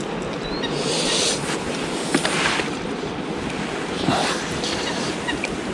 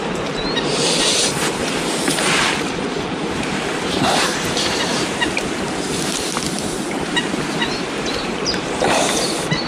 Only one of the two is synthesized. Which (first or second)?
second